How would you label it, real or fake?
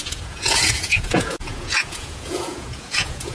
fake